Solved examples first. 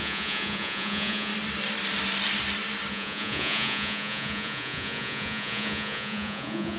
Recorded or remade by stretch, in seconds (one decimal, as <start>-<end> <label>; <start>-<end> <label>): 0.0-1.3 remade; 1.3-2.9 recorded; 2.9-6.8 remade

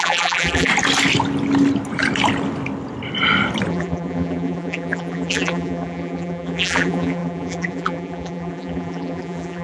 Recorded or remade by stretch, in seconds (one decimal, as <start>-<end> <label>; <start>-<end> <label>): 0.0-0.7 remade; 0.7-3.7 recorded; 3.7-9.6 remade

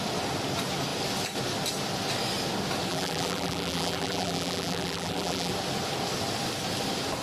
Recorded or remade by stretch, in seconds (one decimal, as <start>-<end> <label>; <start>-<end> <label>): 0.0-2.9 recorded; 2.9-5.5 remade; 5.5-7.2 recorded

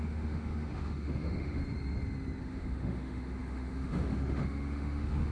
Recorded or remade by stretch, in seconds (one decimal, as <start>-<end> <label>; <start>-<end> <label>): 0.0-1.6 remade; 1.6-2.4 recorded; 2.4-5.3 remade

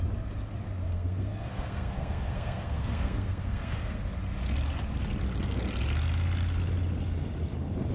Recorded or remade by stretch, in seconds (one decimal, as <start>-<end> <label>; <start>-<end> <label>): 0.0-0.9 recorded; 0.9-4.0 remade; 4.0-7.9 recorded